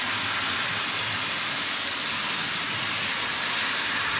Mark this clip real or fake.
real